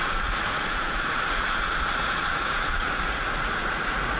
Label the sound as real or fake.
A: fake